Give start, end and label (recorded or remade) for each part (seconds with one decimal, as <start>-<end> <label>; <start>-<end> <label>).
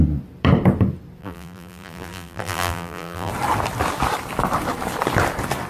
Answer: 0.0-1.2 recorded; 1.2-3.3 remade; 3.3-5.7 recorded